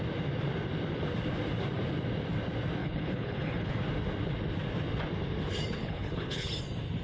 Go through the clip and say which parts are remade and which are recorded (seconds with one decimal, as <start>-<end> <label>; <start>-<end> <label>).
0.0-2.8 recorded; 2.8-3.7 remade; 3.7-5.8 recorded; 5.8-6.5 remade; 6.5-7.0 recorded